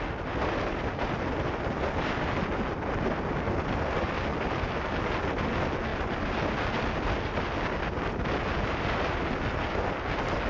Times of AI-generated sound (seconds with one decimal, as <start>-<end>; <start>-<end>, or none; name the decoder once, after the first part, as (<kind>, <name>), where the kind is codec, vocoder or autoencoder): none